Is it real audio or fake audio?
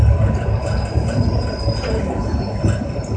real